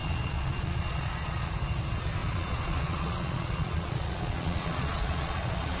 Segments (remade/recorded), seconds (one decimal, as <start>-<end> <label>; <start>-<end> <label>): 0.0-1.5 remade; 1.5-2.2 recorded; 2.2-5.8 remade